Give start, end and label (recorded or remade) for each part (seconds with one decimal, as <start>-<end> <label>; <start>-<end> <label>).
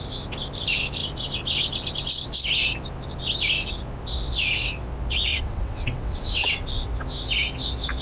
0.0-5.3 recorded; 5.3-6.9 remade; 6.9-8.0 recorded